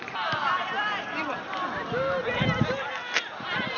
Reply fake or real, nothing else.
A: real